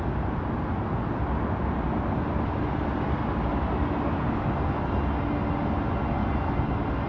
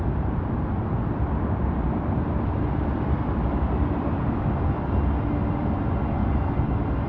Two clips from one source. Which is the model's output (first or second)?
second